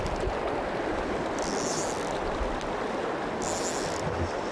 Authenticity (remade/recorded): recorded